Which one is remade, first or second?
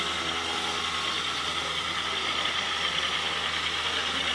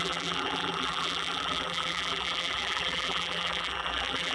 second